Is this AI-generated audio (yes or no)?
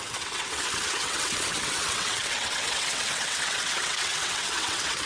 yes